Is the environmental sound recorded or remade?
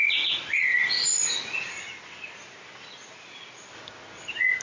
recorded